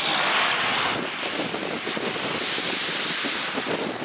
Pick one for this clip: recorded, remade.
recorded